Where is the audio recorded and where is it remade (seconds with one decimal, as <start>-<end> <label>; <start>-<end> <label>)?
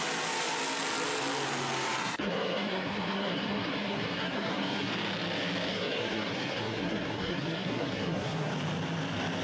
0.0-2.0 recorded; 2.0-4.9 remade; 4.9-5.7 recorded; 5.7-8.5 remade; 8.5-9.4 recorded